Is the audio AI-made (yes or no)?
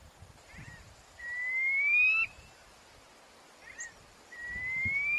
no